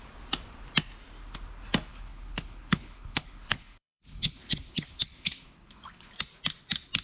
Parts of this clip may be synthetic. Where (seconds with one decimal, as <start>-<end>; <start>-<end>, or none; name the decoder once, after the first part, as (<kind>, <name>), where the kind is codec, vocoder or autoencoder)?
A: 1.9-6.1 (codec, HILCodec)